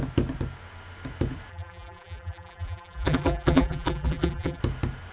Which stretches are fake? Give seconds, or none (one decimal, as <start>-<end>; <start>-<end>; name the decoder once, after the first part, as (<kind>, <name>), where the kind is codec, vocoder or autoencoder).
1.5-4.6 (vocoder, BigVGAN v2)